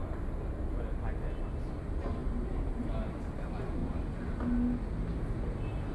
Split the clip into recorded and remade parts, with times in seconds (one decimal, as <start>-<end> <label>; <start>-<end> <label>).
0.0-2.2 recorded; 2.2-3.4 remade; 3.4-5.9 recorded